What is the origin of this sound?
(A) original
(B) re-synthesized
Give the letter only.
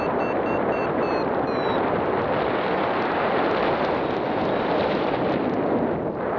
A